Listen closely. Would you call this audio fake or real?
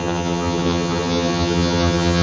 fake